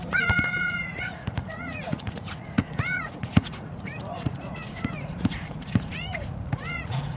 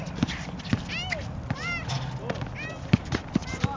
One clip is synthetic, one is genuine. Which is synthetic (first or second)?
first